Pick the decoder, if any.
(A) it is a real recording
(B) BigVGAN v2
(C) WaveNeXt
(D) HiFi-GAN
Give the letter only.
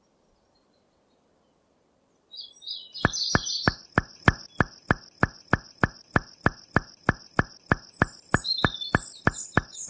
B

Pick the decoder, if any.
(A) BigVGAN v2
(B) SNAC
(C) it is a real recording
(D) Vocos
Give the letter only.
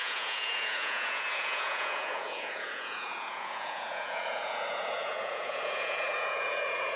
D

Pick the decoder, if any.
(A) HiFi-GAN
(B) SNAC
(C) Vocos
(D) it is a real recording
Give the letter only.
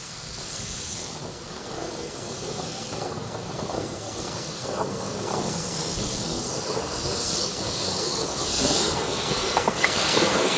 B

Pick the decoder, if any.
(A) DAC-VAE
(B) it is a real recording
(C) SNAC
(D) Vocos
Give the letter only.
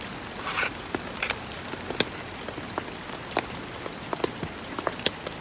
B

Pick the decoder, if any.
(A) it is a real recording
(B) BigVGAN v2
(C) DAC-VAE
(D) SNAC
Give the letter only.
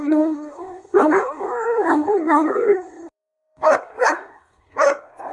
D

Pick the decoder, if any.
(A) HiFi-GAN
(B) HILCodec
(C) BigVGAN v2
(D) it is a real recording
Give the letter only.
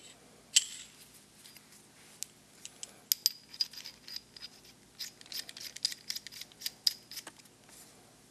D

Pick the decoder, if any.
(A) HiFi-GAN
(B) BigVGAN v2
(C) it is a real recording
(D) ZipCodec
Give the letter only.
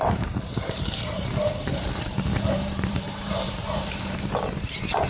B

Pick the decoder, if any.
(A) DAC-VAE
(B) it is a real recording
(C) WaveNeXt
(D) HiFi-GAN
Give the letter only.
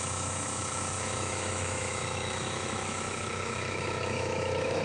A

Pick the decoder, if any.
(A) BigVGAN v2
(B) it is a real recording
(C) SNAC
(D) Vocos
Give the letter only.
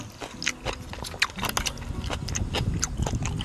B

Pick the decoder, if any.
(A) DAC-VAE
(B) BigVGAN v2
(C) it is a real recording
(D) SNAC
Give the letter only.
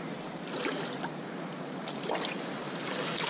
C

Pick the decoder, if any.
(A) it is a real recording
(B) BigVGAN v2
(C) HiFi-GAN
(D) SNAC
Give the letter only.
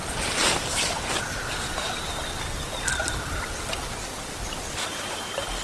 A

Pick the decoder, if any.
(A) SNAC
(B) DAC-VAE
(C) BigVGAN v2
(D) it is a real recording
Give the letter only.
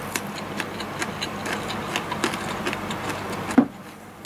D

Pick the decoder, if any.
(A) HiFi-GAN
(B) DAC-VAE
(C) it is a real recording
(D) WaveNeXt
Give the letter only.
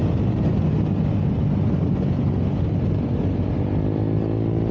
C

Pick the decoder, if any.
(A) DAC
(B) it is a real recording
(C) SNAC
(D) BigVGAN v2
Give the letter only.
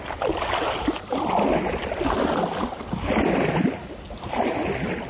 B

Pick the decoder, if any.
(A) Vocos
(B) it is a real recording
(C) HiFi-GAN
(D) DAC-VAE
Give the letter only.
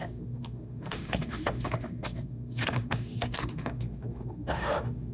D